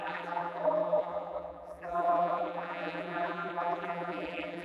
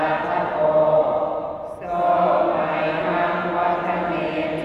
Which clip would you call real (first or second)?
second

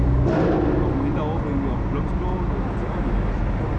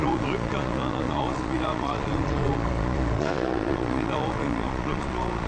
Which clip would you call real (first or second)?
first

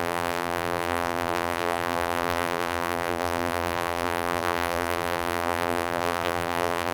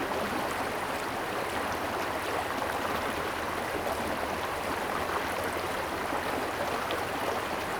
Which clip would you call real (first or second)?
second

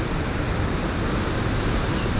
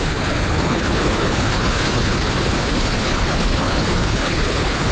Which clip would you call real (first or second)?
first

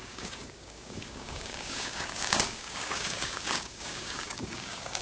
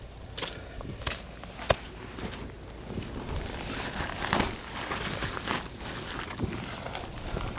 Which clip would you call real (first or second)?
second